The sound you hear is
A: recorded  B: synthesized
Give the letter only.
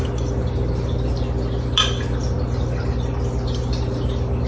A